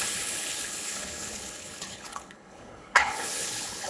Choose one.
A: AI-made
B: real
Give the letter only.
A